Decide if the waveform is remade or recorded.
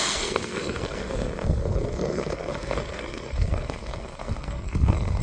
remade